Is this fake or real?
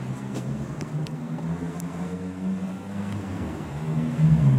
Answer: fake